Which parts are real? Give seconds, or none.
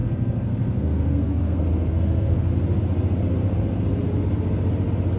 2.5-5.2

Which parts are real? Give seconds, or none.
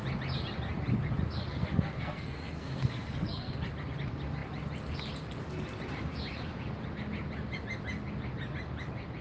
0.0-1.5; 3.5-9.2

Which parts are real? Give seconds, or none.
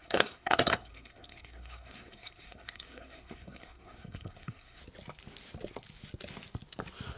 4.8-7.2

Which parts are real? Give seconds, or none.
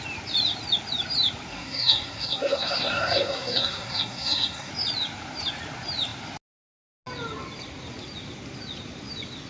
0.0-1.5; 4.7-9.5